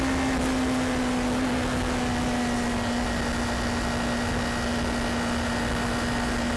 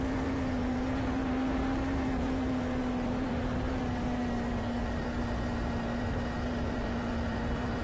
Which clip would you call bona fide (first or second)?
first